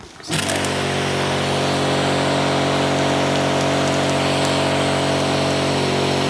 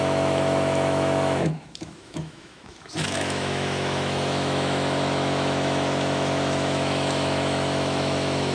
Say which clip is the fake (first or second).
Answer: second